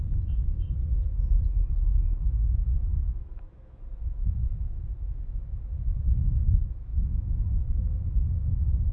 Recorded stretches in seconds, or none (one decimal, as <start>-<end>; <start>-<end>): 2.7-3.2

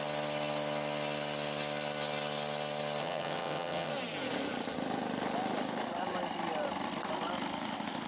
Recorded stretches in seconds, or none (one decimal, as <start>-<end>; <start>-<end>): 0.0-3.0; 3.9-8.1